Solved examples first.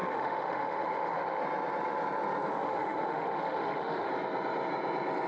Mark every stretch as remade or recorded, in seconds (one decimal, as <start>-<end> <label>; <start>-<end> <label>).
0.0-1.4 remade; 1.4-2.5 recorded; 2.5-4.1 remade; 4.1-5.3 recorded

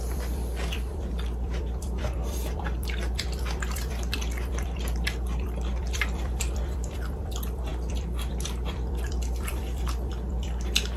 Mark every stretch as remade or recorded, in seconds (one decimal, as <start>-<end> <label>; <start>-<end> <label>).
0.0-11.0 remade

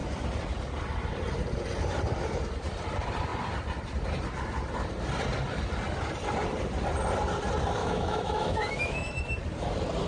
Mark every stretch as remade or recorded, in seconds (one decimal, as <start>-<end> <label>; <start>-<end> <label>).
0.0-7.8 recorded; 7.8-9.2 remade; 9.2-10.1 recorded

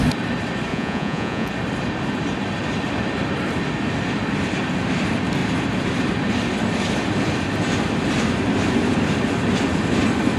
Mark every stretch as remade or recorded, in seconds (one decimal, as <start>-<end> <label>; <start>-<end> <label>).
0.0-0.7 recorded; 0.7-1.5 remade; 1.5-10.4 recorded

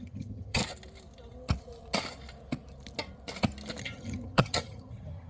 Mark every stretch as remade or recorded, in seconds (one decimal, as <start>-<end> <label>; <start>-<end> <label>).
0.0-0.6 remade; 0.6-3.8 recorded; 3.8-5.3 remade

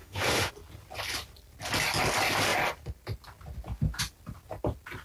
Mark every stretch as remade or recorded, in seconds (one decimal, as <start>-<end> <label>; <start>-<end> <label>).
0.0-0.5 remade; 0.5-5.0 recorded

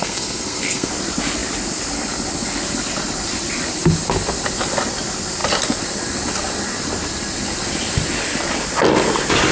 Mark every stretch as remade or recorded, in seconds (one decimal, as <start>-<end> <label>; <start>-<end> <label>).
0.0-0.9 remade; 0.9-9.5 recorded

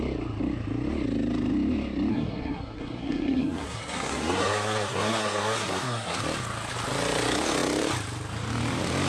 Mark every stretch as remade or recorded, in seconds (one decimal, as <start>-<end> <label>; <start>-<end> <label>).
0.0-2.1 recorded; 2.1-6.2 remade; 6.2-9.1 recorded